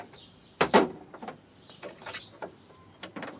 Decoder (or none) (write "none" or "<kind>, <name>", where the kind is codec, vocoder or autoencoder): vocoder, BigVGAN v2